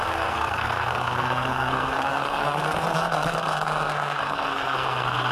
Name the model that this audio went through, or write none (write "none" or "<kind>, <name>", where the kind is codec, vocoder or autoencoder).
codec, SNAC